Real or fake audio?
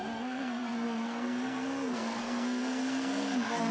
fake